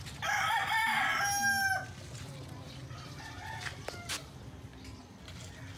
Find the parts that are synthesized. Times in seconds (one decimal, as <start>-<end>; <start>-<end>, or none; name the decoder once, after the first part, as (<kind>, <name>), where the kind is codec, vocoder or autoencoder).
0.0-1.1 (vocoder, BigVGAN v2); 2.0-4.7